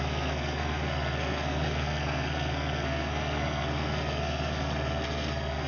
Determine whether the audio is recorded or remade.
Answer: remade